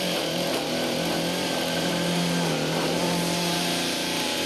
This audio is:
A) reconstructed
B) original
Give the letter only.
A